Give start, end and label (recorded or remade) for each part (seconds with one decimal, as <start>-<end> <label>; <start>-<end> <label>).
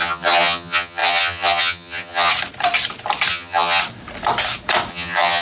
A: 0.0-2.3 remade; 2.3-3.3 recorded; 3.3-3.8 remade; 3.8-4.9 recorded; 4.9-5.4 remade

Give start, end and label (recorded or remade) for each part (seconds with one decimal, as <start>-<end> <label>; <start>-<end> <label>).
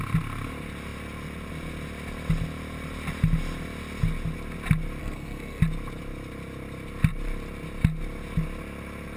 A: 0.0-5.0 recorded; 5.0-5.6 remade; 5.6-9.2 recorded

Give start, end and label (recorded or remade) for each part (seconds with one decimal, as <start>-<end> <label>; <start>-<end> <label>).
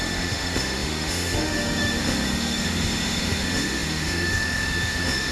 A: 0.0-5.3 remade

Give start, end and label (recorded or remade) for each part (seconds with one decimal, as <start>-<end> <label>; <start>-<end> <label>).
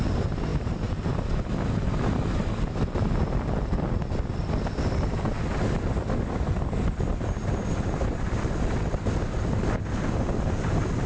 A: 0.0-11.1 recorded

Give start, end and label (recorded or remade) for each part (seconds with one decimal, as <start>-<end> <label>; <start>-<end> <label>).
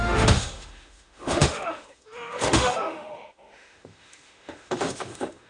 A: 0.0-5.5 remade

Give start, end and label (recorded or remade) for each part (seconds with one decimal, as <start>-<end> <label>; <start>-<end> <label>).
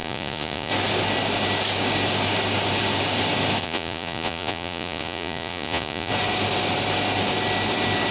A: 0.0-0.7 remade; 0.7-3.6 recorded; 3.6-6.1 remade; 6.1-8.1 recorded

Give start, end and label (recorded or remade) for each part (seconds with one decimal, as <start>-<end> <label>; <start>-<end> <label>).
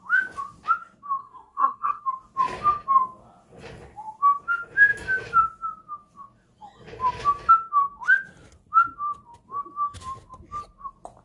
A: 0.0-1.2 recorded; 1.2-2.0 remade; 2.0-11.2 recorded